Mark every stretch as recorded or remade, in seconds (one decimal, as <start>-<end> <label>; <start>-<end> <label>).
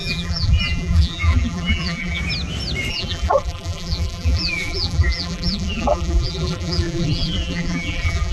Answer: 0.0-2.2 remade; 2.2-2.9 recorded; 2.9-8.3 remade